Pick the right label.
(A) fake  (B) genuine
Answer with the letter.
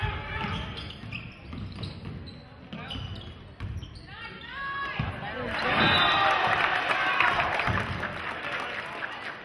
B